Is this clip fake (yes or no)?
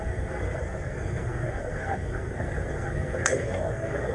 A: yes